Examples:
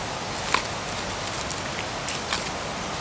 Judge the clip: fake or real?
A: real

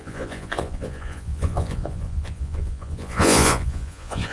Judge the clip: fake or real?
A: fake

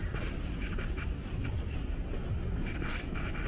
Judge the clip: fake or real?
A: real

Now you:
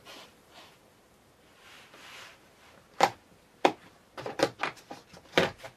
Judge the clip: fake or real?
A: real